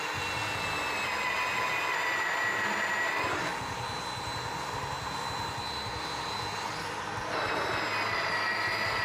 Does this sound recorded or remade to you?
recorded